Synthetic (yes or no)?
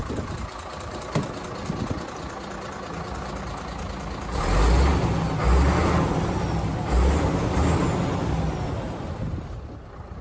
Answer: no